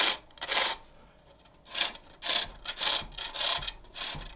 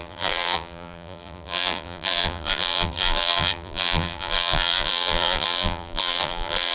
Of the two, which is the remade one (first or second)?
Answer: second